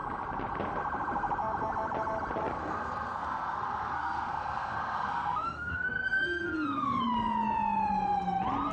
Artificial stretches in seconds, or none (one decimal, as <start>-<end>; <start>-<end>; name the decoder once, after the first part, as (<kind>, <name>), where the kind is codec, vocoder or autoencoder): 2.6-7.0 (codec, SNAC)